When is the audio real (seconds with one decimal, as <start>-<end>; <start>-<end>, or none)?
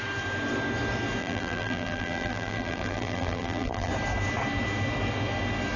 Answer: 0.0-1.2; 3.9-5.8